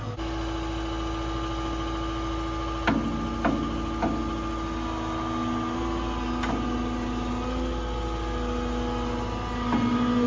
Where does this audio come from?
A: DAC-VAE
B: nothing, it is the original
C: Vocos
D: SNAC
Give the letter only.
B